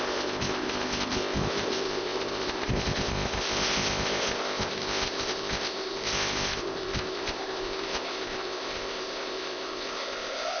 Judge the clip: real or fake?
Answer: fake